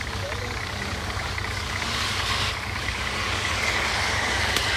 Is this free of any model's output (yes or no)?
no